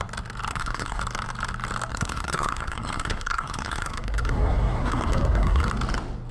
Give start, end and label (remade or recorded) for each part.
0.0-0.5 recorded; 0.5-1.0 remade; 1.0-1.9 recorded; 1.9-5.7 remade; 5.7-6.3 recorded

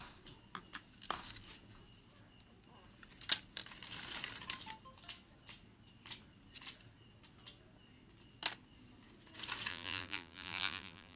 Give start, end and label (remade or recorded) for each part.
0.0-9.7 recorded; 9.7-11.2 remade

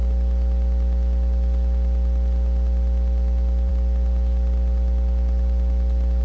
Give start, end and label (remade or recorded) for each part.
0.0-6.2 recorded

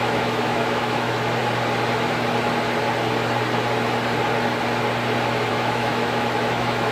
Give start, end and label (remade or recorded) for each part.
0.0-1.4 remade; 1.4-5.5 recorded; 5.5-6.9 remade

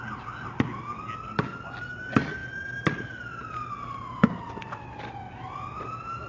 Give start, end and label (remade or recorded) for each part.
0.0-6.3 recorded

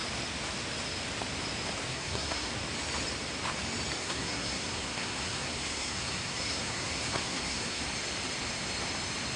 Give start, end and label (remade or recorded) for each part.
0.0-1.9 recorded; 1.9-2.5 remade; 2.5-4.0 recorded; 4.0-7.8 remade; 7.8-9.4 recorded